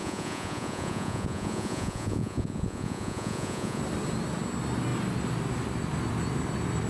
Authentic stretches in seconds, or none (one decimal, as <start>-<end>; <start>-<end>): 3.8-6.9